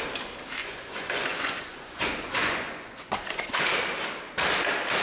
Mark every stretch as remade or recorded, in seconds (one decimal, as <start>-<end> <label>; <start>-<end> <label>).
0.0-0.6 recorded; 0.6-3.6 remade; 3.6-5.0 recorded